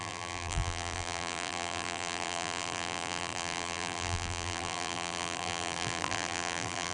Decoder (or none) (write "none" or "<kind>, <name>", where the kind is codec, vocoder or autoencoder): vocoder, BigVGAN v2